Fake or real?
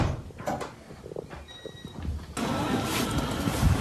real